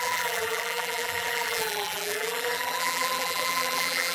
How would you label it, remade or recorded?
remade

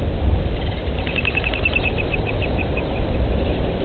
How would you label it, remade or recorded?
recorded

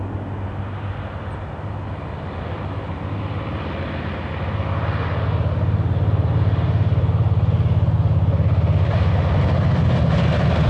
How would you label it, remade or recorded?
recorded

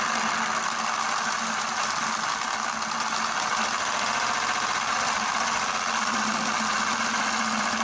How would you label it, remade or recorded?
recorded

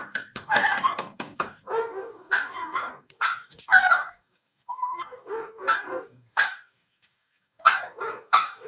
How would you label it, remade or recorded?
remade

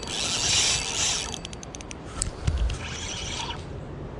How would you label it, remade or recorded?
recorded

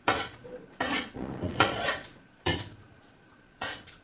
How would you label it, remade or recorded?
remade